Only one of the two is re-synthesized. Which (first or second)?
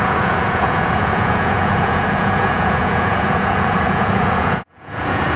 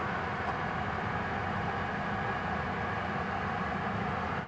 first